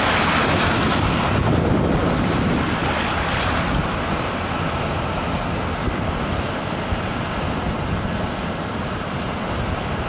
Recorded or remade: recorded